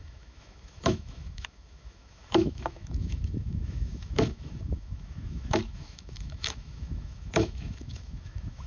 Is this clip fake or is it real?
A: fake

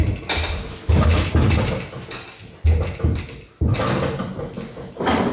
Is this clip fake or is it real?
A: real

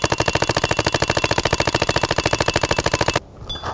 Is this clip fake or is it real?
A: real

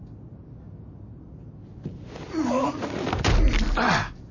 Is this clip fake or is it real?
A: real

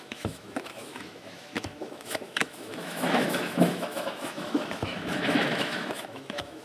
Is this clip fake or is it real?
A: fake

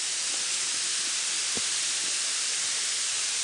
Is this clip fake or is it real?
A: real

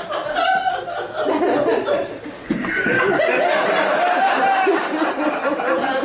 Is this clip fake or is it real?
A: real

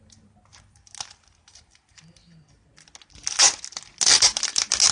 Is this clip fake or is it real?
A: real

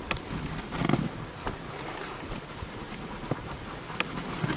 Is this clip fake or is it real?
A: real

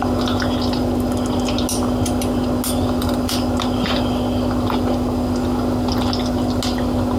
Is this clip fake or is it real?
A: real